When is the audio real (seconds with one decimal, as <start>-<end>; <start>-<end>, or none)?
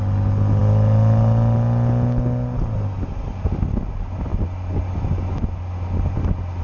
0.0-6.6